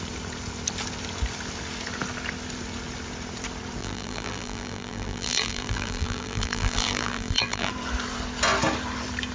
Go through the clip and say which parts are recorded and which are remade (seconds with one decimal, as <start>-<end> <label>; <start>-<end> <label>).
0.0-3.8 recorded; 3.8-7.7 remade; 7.7-9.3 recorded